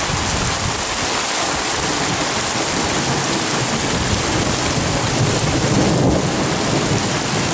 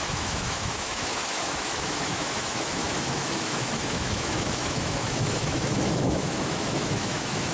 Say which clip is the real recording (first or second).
first